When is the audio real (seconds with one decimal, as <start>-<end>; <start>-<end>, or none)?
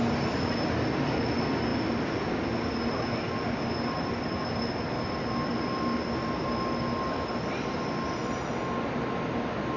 0.0-9.8